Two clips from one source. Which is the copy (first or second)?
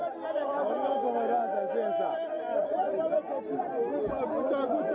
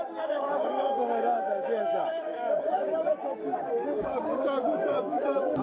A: second